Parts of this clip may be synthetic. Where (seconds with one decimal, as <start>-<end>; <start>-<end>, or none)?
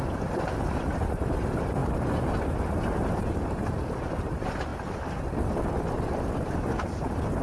0.0-4.7; 6.4-7.4